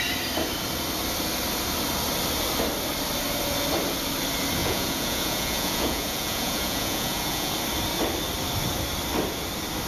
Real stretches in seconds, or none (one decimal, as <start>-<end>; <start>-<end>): 0.0-4.6; 7.5-9.9